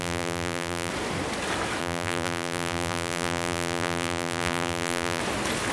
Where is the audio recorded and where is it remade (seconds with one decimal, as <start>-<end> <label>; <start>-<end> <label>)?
0.0-0.9 remade; 0.9-1.8 recorded; 1.8-5.2 remade; 5.2-5.7 recorded